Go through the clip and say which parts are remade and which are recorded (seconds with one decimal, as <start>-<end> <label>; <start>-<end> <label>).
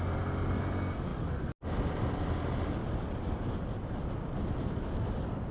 0.0-5.5 recorded